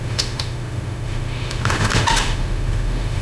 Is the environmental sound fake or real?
fake